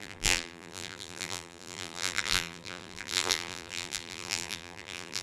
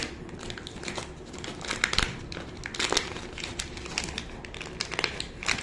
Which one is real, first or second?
second